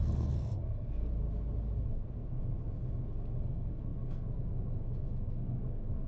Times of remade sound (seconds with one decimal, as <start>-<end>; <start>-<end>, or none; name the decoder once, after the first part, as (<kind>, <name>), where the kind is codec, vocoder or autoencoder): 0.0-1.1 (codec, SNAC); 1.9-2.4; 3.4-6.1

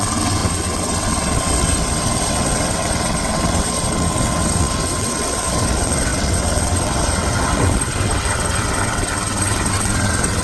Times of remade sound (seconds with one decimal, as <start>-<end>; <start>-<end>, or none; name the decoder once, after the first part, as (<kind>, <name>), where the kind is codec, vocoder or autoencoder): 0.0-10.4 (vocoder, WaveNeXt)

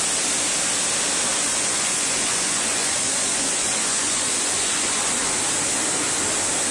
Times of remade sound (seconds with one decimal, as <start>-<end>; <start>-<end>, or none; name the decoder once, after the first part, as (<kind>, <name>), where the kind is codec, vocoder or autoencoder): 1.3-5.3 (vocoder, Vocos)

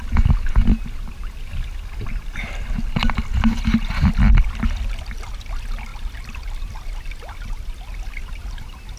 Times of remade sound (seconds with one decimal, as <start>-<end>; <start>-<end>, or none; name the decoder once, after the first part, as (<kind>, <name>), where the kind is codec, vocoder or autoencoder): none

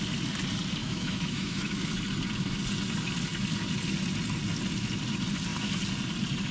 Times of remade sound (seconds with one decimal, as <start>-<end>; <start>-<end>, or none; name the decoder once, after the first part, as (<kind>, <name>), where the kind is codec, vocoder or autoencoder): 0.8-1.9 (autoencoder, DAC-VAE)

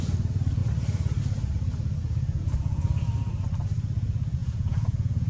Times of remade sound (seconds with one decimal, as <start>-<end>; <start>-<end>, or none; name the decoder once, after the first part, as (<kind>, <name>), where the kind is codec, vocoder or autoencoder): 2.0-2.9 (vocoder, Vocos); 4.4-5.3

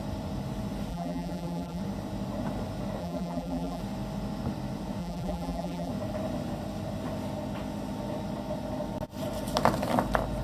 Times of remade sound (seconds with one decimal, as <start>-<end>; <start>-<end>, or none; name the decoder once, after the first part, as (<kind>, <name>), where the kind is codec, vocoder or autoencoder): 0.9-1.8 (vocoder, BigVGAN v2); 3.0-3.8; 5.0-5.9